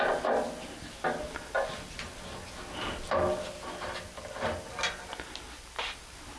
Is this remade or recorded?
recorded